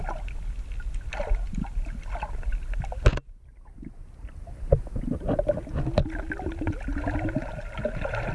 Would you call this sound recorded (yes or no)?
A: yes